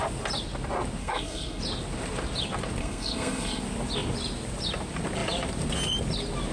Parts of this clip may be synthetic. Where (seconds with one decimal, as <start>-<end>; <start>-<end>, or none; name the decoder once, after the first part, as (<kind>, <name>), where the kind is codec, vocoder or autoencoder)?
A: 1.0-1.6 (codec, SNAC); 2.8-3.6

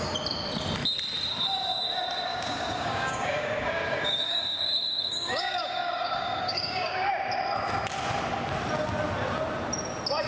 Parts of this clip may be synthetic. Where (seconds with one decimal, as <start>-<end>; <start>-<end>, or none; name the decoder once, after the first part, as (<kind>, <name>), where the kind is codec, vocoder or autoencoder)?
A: 2.3-7.1 (codec, DAC)

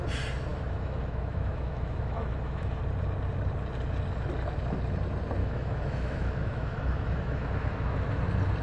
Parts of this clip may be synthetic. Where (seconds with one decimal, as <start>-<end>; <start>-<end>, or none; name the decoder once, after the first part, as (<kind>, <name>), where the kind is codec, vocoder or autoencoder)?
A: 0.5-2.8 (autoencoder, DAC-VAE); 5.4-8.2